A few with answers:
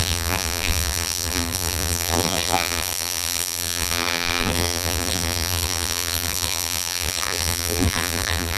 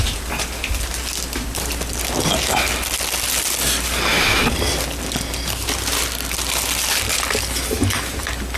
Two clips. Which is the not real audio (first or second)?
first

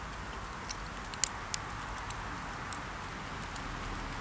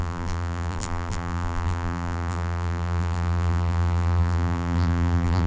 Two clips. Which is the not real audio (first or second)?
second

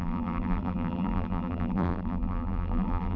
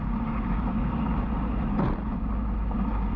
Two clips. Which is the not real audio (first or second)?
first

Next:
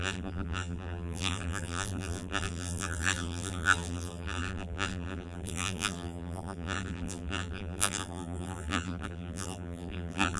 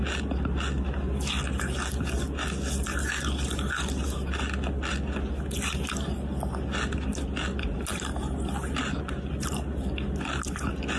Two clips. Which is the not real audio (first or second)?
first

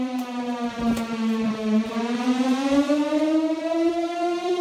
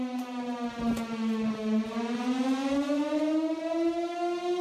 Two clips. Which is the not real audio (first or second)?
first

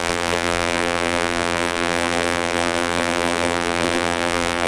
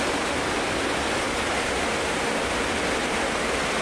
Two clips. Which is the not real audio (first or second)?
first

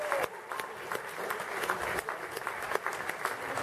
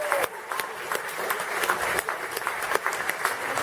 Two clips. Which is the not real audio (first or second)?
second